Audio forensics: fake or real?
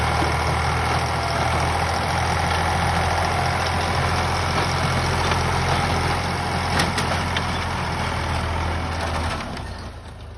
real